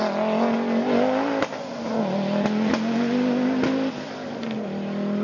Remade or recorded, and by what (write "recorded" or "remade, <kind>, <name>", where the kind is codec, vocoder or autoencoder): recorded